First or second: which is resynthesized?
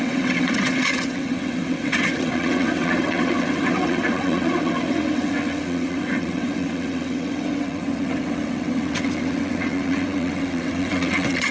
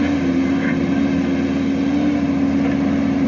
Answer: first